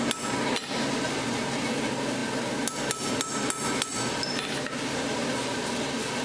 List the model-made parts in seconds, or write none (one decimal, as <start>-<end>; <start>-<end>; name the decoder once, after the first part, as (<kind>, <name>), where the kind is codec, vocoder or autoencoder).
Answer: none